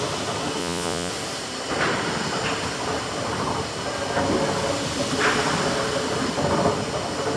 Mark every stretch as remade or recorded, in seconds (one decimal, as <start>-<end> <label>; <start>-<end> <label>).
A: 0.0-0.6 recorded; 0.6-1.1 remade; 1.1-7.4 recorded